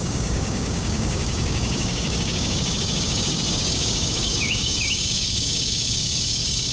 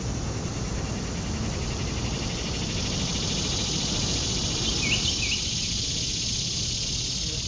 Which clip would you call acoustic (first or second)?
second